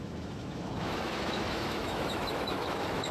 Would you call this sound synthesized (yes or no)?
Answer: yes